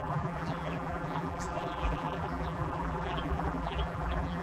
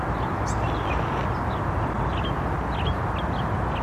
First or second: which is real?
second